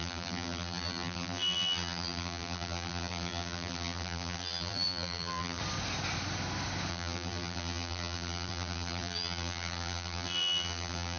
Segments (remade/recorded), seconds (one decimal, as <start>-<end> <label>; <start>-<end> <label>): 0.0-5.6 remade; 5.6-6.9 recorded; 6.9-11.2 remade